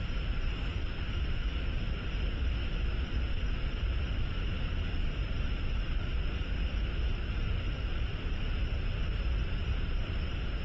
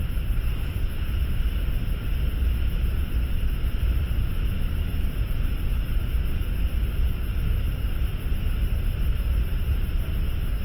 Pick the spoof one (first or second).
first